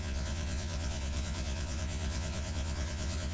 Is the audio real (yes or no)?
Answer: no